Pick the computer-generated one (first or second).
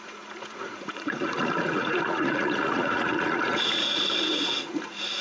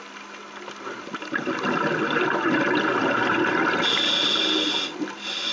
first